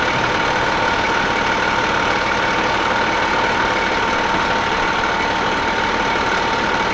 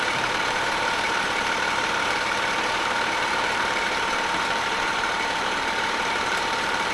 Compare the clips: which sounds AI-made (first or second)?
second